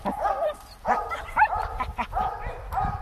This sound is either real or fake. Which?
real